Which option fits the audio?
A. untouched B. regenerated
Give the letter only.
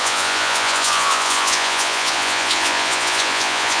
B